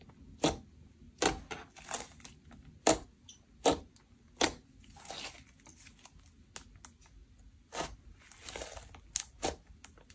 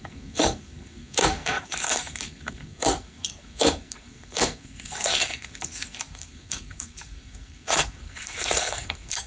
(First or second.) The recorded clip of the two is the first